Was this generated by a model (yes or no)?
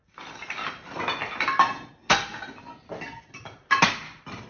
no